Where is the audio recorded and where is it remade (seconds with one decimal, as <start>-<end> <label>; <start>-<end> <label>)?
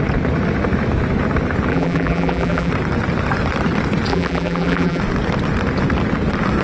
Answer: 0.0-1.7 recorded; 1.7-2.7 remade; 2.7-4.1 recorded; 4.1-5.0 remade; 5.0-6.6 recorded